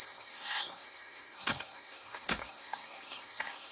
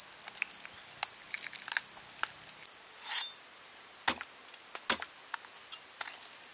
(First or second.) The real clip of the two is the second